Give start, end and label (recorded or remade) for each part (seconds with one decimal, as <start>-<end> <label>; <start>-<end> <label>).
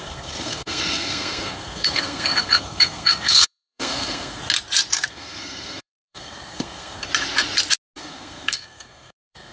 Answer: 0.0-4.4 remade; 4.4-5.1 recorded; 5.1-7.1 remade; 7.1-8.0 recorded; 8.0-9.5 remade